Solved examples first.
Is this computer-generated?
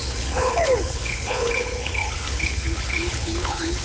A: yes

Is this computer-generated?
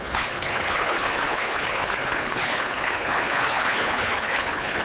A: yes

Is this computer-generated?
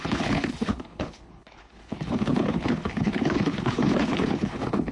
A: yes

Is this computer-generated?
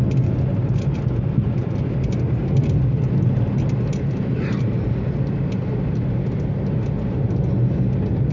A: no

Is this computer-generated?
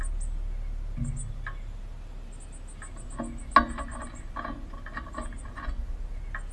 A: no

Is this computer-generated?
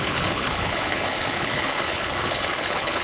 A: yes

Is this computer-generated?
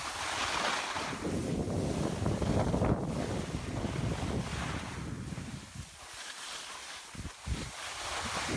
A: no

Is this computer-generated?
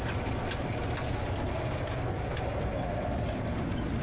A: no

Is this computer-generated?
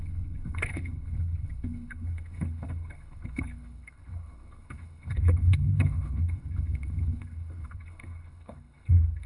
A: yes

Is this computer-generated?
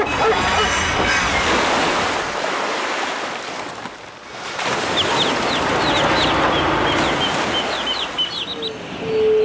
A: no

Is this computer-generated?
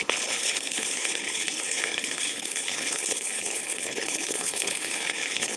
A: yes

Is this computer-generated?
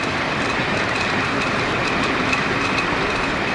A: no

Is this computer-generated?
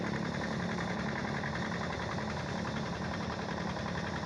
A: no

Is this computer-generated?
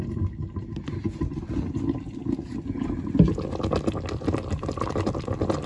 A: no